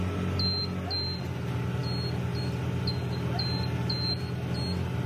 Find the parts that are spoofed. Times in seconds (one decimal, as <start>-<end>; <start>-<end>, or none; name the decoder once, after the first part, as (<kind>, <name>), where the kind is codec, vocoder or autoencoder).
none

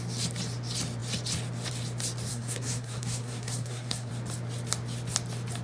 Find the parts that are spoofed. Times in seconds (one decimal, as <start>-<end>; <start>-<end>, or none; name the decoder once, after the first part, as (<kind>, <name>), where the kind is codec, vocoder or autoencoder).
2.3-4.1 (codec, SNAC)

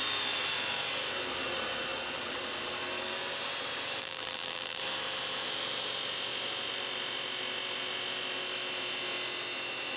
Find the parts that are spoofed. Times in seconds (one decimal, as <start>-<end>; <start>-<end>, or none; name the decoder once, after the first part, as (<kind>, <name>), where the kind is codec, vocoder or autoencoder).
4.0-4.8 (vocoder, BigVGAN v2)